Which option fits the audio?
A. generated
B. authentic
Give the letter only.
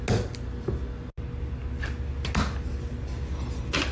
B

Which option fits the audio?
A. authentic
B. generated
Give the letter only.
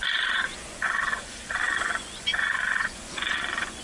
B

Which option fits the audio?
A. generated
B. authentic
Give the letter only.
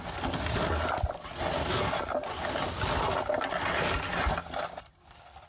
B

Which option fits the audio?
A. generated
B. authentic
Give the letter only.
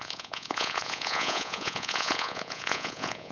A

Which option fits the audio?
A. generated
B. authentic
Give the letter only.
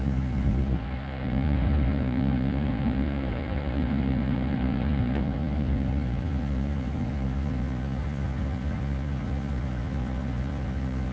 A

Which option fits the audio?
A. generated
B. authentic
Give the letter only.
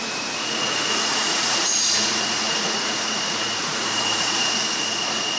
A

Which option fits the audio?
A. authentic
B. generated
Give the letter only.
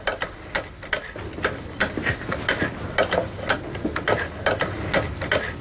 A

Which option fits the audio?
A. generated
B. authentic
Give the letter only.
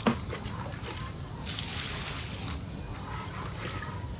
B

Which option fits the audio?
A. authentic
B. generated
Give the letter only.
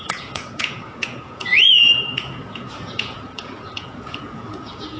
B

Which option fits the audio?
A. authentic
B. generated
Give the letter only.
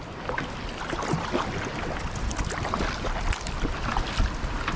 A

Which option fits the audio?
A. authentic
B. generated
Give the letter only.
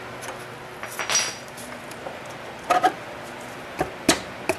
A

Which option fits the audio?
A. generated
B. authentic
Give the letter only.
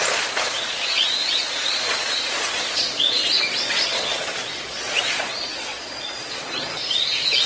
A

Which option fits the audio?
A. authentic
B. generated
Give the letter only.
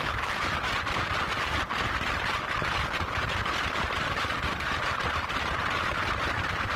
A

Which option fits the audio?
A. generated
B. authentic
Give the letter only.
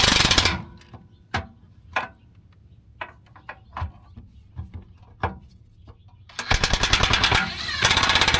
B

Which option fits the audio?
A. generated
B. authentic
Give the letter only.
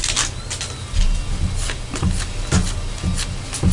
B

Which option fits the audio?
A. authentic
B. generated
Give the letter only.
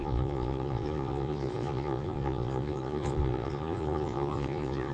B